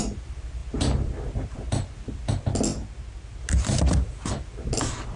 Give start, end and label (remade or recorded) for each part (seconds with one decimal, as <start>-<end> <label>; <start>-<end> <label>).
0.0-5.2 recorded